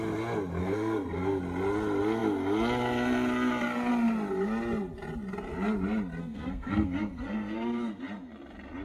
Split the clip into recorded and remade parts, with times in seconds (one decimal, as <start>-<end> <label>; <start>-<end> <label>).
0.0-0.6 recorded; 0.6-1.4 remade; 1.4-6.2 recorded; 6.2-8.0 remade; 8.0-8.8 recorded